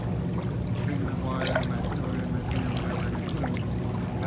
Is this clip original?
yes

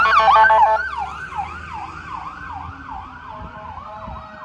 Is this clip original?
yes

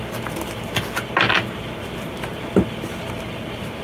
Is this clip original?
yes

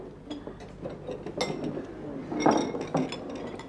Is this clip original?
yes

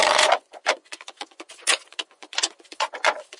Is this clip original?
no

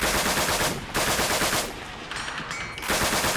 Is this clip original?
yes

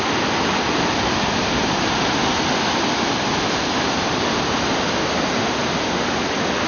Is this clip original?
yes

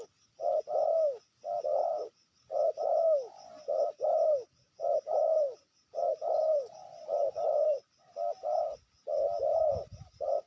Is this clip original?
yes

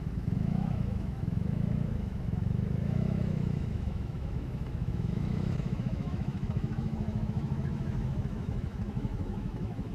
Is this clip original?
no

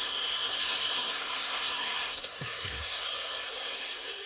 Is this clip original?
no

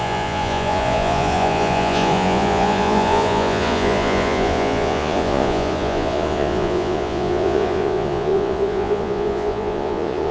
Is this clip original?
no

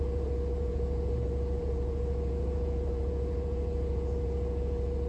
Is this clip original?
no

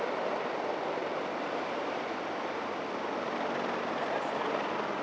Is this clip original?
yes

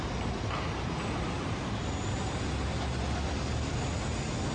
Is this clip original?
yes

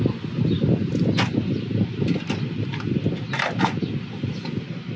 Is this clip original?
yes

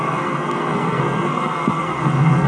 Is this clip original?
no